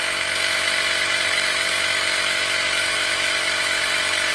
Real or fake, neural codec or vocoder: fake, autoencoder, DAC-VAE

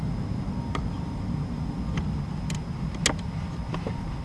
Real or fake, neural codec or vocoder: real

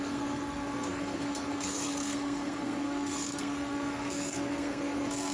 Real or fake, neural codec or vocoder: fake, codec, SNAC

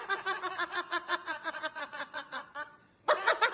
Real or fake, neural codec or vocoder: fake, vocoder, WaveNeXt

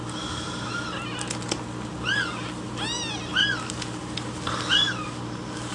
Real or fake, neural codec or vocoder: real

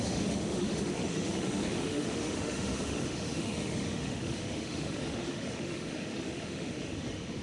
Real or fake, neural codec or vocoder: fake, autoencoder, DAC-VAE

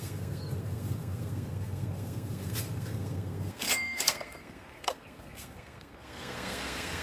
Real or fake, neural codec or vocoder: fake, codec, SNAC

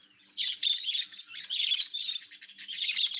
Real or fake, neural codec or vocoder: real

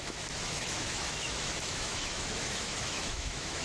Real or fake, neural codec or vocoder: fake, autoencoder, DAC-VAE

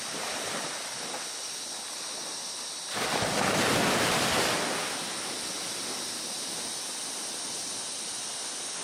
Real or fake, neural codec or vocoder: real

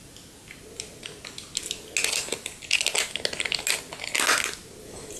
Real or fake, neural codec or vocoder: real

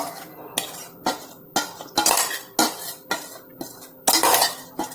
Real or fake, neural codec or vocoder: real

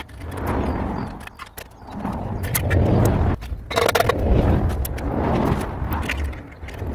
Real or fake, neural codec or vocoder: real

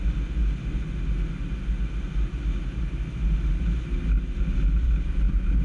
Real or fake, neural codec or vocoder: real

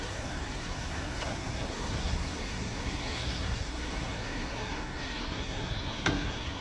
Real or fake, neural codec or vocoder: fake, codec, SNAC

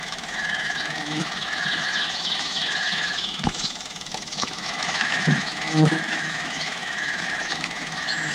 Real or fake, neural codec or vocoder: fake, autoencoder, DAC-VAE